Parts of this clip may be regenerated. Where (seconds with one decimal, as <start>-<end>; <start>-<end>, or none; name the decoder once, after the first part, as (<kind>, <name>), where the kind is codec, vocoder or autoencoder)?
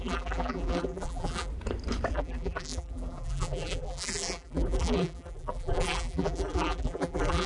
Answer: 0.0-1.5 (vocoder, BigVGAN v2); 2.1-7.5